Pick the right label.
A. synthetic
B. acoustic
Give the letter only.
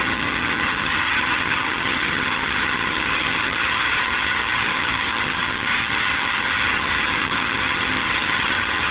A